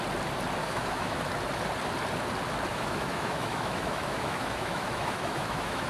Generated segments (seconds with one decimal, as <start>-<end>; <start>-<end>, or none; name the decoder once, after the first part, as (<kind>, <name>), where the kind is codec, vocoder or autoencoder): 0.6-1.2 (autoencoder, DAC-VAE); 2.7-5.9